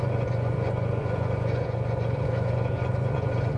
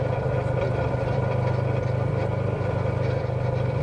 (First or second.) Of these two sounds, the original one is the second